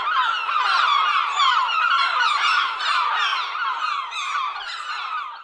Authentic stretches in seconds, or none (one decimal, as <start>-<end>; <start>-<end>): 0.0-0.8